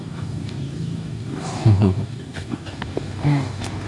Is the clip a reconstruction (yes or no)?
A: yes